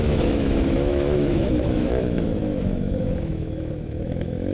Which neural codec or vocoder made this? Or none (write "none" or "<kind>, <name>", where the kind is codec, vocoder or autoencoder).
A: autoencoder, DAC-VAE